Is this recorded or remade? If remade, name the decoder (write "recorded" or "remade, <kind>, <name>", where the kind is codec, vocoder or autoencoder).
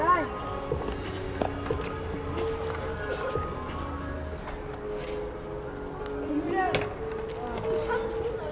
recorded